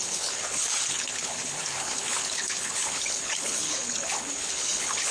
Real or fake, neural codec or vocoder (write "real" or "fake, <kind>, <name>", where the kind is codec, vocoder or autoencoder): fake, codec, HILCodec